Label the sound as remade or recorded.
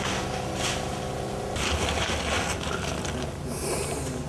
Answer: recorded